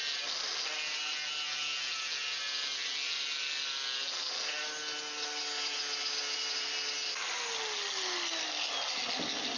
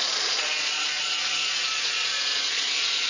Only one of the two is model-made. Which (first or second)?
second